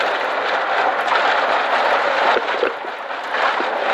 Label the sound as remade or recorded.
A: recorded